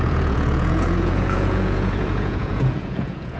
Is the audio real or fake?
fake